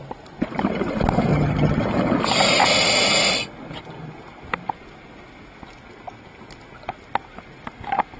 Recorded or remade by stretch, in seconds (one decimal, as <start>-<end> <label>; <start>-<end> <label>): 0.0-1.3 recorded; 1.3-1.8 remade; 1.8-8.2 recorded